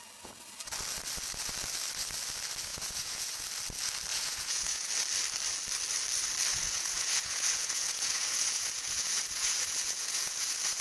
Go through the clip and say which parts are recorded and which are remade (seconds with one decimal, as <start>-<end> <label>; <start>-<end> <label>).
0.0-2.7 recorded; 2.7-3.4 remade; 3.4-4.1 recorded; 4.1-4.9 remade; 4.9-6.5 recorded; 6.5-10.8 remade